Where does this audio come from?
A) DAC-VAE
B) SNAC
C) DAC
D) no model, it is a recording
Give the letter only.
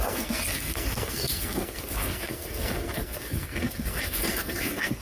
B